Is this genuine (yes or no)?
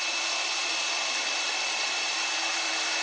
no